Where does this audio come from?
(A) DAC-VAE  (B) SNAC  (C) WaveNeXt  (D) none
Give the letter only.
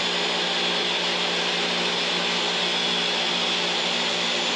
D